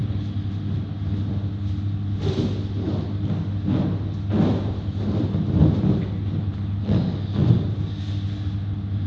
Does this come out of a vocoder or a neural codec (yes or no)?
no